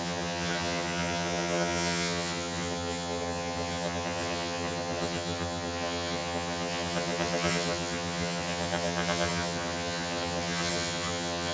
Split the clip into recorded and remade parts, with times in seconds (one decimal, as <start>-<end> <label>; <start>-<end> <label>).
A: 0.0-11.5 remade